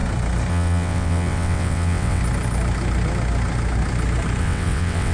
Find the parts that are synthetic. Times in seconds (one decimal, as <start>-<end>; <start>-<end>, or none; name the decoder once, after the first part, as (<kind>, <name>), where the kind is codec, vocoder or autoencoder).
0.5-2.2 (vocoder, WaveNeXt); 4.4-5.1